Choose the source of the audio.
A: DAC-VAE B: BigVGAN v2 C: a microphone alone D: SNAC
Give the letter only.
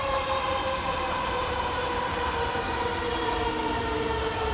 B